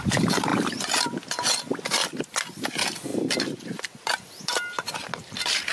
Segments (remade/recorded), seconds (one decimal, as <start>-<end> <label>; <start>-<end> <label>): 0.0-5.7 recorded